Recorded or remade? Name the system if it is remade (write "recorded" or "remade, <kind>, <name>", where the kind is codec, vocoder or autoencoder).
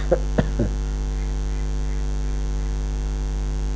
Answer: recorded